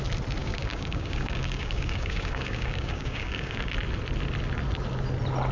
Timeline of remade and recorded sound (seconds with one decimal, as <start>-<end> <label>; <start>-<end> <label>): 0.0-0.4 recorded; 0.4-3.7 remade; 3.7-5.5 recorded